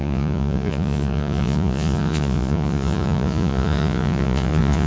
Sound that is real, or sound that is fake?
fake